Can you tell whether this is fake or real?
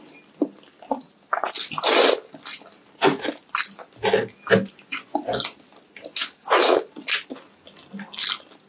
real